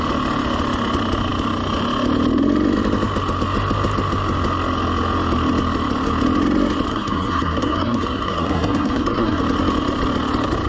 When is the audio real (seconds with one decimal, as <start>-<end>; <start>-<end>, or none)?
0.0-6.9; 9.4-10.7